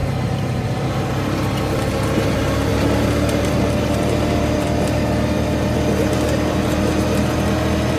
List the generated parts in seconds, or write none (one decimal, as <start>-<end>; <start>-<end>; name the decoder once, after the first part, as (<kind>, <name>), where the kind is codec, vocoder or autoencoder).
0.0-1.0 (vocoder, BigVGAN v2); 2.7-3.6